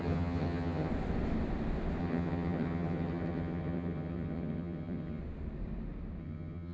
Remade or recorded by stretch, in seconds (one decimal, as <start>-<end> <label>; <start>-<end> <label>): 0.0-0.9 remade; 0.9-2.0 recorded; 2.0-5.2 remade; 5.2-6.2 recorded; 6.2-6.7 remade